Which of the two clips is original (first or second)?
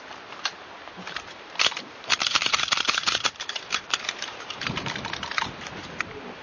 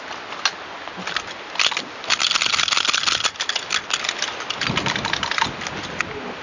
second